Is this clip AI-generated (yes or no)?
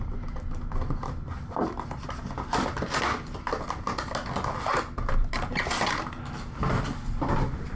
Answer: no